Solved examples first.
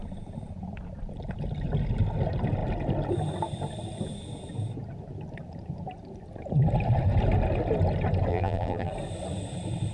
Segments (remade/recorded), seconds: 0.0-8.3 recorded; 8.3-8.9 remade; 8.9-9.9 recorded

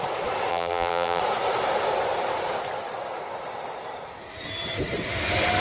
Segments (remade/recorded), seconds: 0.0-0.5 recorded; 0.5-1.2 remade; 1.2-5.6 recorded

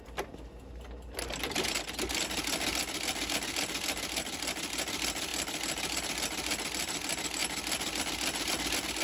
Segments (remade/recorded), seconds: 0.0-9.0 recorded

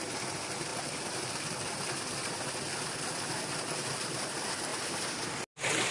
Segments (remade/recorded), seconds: 0.0-4.7 recorded; 4.7-5.3 remade; 5.3-5.9 recorded

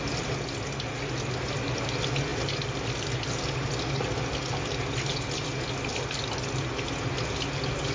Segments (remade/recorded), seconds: 0.0-7.9 recorded

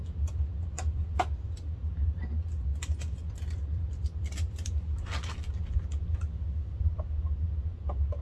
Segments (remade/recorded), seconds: 0.0-1.6 remade; 1.6-2.7 recorded; 2.7-6.0 remade; 6.0-8.2 recorded